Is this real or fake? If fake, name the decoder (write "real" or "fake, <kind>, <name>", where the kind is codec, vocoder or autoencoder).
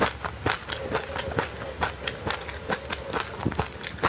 real